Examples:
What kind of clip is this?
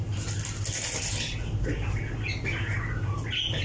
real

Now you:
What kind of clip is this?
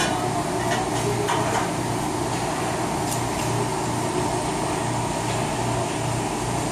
real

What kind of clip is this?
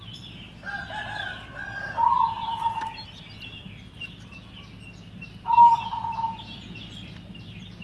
real